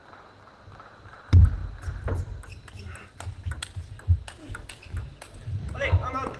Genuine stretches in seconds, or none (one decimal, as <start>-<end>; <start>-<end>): 0.0-4.4; 5.2-6.4

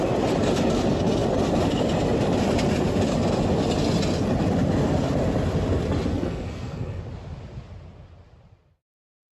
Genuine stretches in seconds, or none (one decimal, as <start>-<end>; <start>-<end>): 0.0-6.1; 7.0-9.3

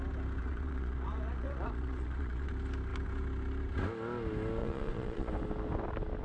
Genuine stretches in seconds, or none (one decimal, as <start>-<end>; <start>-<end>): 0.0-0.4; 2.5-4.6; 5.3-6.2

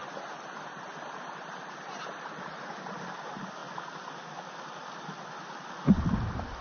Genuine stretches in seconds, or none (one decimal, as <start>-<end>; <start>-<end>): 0.0-6.6

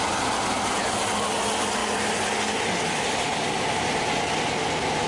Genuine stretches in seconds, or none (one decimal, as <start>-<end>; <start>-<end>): 0.0-5.1

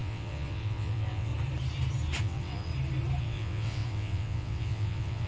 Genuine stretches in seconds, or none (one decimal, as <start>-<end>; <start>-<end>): 1.3-2.2; 2.7-3.2

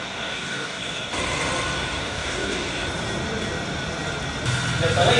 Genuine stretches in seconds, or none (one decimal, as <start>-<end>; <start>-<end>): 1.1-2.0; 2.7-5.2